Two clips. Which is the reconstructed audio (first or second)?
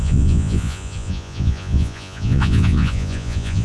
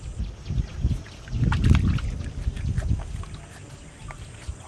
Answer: first